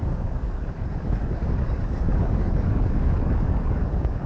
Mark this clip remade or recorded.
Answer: remade